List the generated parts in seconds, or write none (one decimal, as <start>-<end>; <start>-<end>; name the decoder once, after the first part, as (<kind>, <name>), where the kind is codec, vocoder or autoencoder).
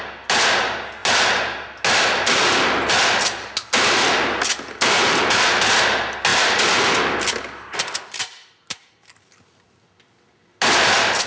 none